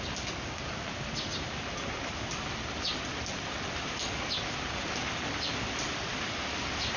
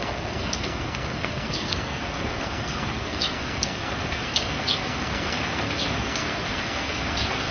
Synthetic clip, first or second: second